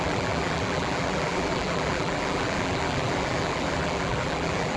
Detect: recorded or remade remade